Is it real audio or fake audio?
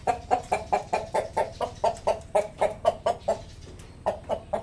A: real